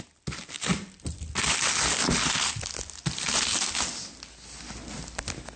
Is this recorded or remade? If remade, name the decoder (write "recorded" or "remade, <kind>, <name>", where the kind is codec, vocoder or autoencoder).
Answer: recorded